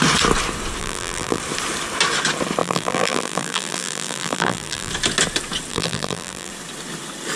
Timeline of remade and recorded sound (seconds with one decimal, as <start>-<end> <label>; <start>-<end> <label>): 0.0-0.8 recorded; 0.8-1.4 remade; 1.4-2.6 recorded; 2.6-4.9 remade; 4.9-5.7 recorded; 5.7-6.5 remade; 6.5-7.4 recorded